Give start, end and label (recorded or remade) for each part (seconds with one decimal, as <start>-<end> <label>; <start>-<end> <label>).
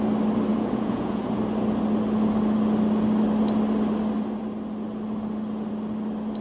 0.0-0.5 recorded; 0.5-1.3 remade; 1.3-6.4 recorded